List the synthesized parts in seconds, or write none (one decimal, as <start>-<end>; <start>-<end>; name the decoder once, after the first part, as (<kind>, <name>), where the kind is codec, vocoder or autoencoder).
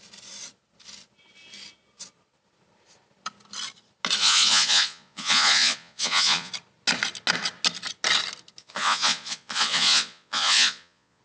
4.2-6.5 (vocoder, Vocos); 8.6-11.2